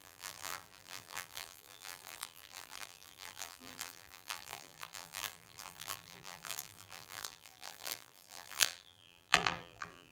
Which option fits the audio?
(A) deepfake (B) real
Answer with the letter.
A